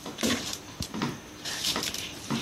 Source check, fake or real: fake